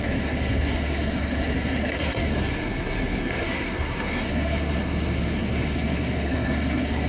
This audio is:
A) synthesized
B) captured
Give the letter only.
A